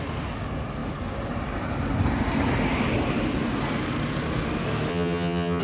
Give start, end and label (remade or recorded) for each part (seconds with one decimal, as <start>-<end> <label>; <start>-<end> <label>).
0.0-4.9 recorded; 4.9-5.6 remade